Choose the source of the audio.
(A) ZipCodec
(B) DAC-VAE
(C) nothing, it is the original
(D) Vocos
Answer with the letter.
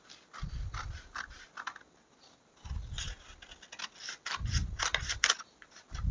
C